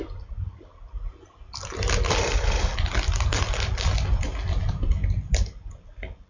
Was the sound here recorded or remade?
recorded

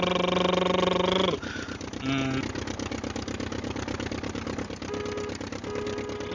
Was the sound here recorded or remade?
recorded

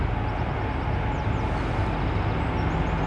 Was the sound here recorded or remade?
recorded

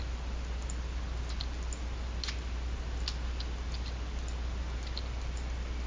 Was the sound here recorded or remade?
recorded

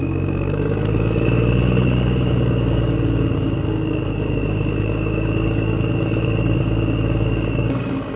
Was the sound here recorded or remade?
remade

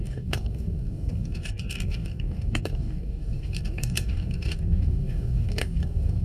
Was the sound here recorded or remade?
remade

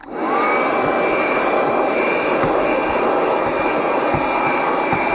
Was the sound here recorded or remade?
recorded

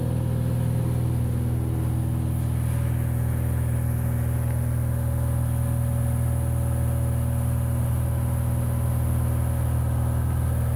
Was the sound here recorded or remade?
recorded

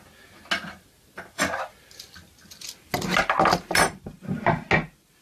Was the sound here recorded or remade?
recorded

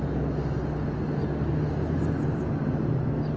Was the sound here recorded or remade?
recorded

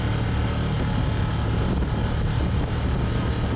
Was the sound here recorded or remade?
recorded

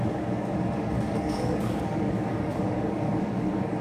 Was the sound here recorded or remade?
remade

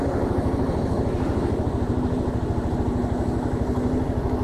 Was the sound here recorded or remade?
recorded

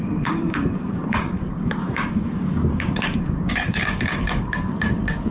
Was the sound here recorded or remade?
remade